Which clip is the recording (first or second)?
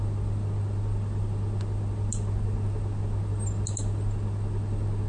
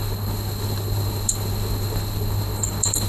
first